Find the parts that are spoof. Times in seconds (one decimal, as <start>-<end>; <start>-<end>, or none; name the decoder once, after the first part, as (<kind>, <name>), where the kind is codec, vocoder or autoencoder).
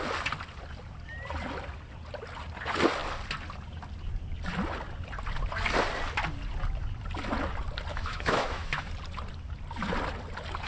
7.9-8.9 (autoencoder, DAC-VAE)